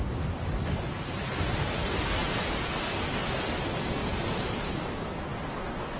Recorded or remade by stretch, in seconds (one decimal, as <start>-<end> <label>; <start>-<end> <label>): 0.0-2.2 recorded; 2.2-2.7 remade; 2.7-4.0 recorded; 4.0-4.7 remade; 4.7-6.0 recorded